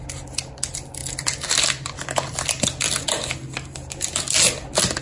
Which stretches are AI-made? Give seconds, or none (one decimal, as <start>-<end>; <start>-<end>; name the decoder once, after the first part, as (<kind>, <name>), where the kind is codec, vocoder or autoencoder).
none